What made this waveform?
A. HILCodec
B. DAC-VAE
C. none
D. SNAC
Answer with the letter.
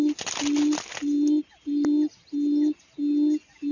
C